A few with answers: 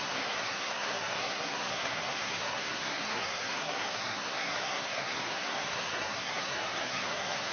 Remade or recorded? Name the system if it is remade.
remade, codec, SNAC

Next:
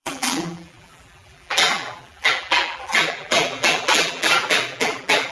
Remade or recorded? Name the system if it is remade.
remade, vocoder, BigVGAN v2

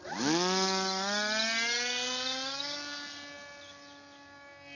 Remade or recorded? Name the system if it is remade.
recorded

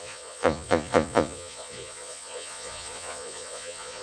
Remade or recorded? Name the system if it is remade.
remade, vocoder, Vocos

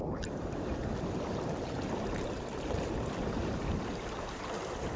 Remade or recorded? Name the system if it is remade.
remade, vocoder, BigVGAN v2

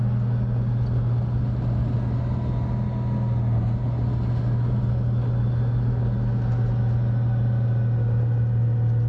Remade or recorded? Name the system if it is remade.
recorded